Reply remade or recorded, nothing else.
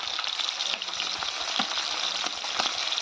recorded